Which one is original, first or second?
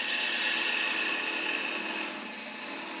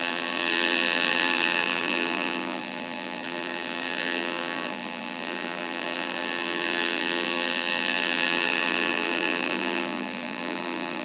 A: first